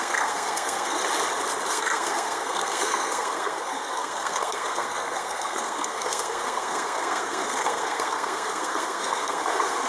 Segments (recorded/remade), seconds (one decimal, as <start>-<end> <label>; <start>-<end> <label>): 0.0-1.0 remade; 1.0-1.7 recorded; 1.7-9.9 remade